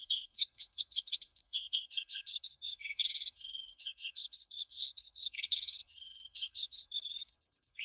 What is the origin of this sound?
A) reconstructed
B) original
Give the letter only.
A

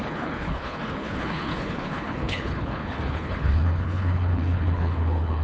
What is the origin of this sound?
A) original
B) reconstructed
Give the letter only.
B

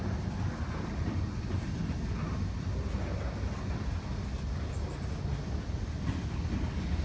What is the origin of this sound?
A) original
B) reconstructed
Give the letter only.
A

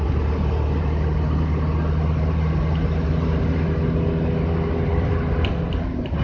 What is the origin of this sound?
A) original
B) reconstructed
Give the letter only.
A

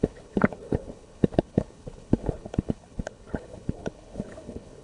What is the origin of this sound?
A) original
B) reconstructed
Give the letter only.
B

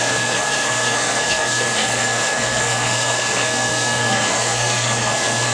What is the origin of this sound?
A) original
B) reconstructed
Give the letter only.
B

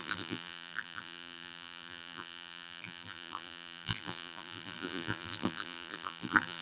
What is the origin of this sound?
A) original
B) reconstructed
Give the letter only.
B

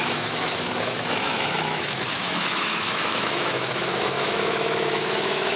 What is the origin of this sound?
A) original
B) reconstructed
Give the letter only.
B